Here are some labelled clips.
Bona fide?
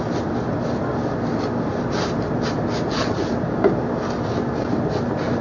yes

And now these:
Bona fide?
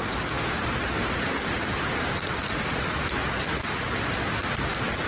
yes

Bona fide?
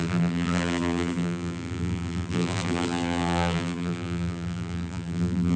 no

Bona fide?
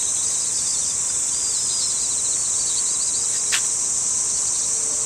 yes